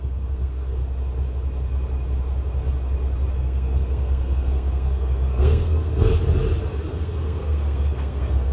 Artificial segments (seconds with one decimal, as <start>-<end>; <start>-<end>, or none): 0.0-0.8; 3.3-6.1; 6.9-8.5